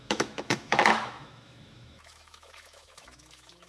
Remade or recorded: remade